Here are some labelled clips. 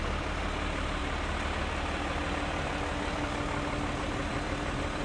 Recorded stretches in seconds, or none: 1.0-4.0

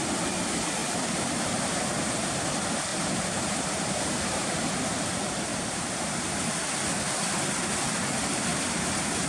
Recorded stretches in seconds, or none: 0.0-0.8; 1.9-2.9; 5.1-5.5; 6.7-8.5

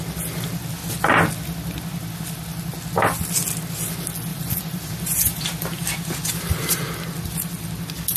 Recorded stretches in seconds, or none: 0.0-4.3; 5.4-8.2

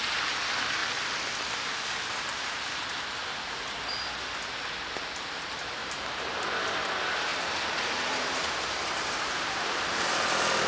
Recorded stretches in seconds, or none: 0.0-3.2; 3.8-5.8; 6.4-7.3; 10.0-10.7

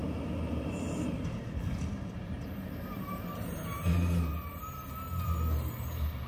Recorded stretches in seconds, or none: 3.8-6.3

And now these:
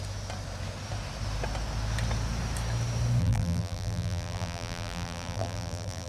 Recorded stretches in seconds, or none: 0.0-3.2

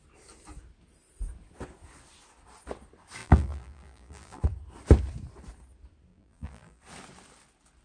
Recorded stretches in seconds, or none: 0.0-3.2; 4.4-6.1; 6.8-7.8